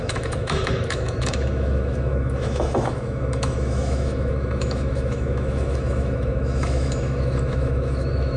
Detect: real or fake fake